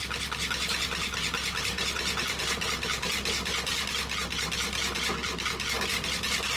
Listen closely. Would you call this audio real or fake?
real